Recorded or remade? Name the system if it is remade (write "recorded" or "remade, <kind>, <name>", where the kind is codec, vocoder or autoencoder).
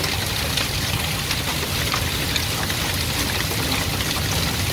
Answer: recorded